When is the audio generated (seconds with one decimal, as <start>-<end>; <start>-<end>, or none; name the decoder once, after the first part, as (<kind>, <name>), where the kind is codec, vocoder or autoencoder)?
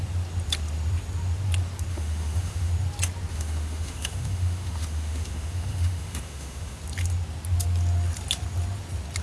1.9-2.7 (autoencoder, DAC-VAE); 3.3-6.8